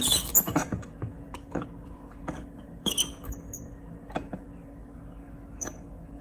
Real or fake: fake